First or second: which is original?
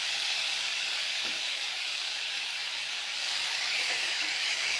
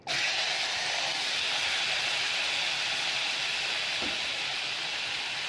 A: second